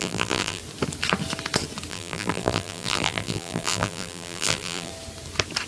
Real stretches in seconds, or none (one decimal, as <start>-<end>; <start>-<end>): 0.6-1.9; 4.9-5.7